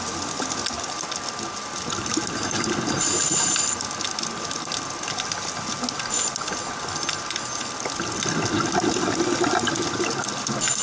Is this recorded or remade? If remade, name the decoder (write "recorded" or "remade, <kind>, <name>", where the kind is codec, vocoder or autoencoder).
recorded